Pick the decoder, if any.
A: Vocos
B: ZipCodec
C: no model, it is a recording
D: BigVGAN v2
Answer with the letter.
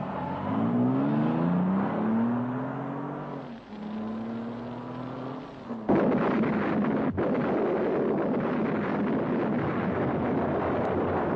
C